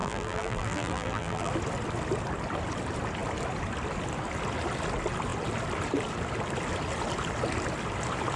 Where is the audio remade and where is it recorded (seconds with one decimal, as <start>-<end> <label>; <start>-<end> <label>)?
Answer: 0.0-1.5 remade; 1.5-8.4 recorded